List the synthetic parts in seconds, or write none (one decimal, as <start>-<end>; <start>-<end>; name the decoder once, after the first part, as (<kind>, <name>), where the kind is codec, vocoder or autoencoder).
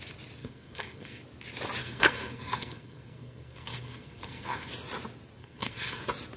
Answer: 0.4-1.2 (codec, SNAC); 1.8-4.7; 5.4-6.0